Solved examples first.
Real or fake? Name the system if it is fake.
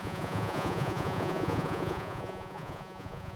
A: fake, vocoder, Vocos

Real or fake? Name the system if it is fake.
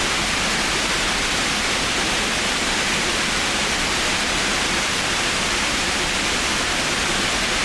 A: real